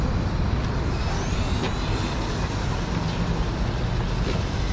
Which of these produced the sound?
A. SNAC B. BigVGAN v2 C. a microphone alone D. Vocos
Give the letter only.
C